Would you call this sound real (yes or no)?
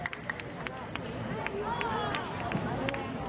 yes